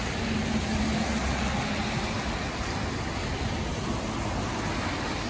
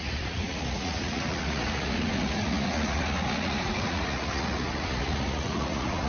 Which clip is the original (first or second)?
first